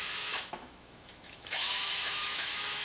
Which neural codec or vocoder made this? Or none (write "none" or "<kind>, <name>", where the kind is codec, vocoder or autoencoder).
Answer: autoencoder, DAC-VAE